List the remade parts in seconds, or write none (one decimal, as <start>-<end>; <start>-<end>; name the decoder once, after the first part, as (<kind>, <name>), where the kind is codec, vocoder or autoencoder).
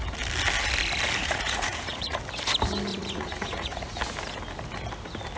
1.2-2.2 (vocoder, Vocos); 2.9-4.0